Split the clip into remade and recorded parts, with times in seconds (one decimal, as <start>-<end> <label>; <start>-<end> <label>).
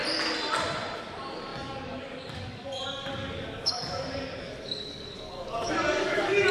0.0-1.0 recorded; 1.0-6.5 remade